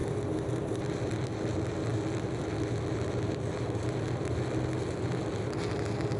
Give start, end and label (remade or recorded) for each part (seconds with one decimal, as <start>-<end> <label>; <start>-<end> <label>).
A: 0.0-0.8 remade; 0.8-6.2 recorded